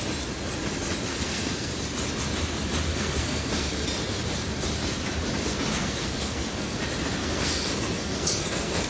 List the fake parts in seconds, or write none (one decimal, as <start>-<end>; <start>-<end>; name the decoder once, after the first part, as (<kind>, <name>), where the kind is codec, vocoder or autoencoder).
1.1-1.7 (codec, SNAC); 2.9-3.7; 5.5-6.8; 7.2-8.9